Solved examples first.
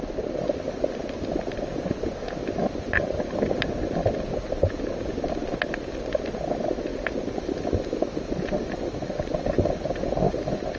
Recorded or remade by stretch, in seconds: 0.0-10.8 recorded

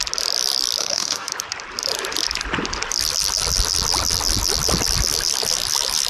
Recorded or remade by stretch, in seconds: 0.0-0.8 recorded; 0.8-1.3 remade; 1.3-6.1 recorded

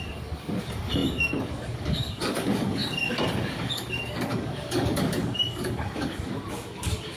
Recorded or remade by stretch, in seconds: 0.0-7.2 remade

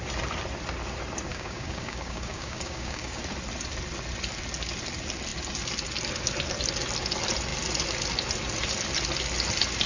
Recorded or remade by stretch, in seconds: 0.0-1.3 recorded; 1.3-3.2 remade; 3.2-9.9 recorded

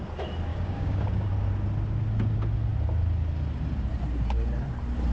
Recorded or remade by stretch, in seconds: 0.0-0.5 recorded; 0.5-1.3 remade; 1.3-5.1 recorded

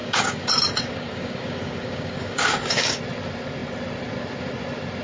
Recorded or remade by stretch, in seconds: 0.0-3.0 remade; 3.0-5.0 recorded

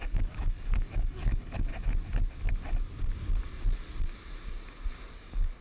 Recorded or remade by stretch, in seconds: 0.0-1.7 remade; 1.7-5.1 recorded; 5.1-5.6 remade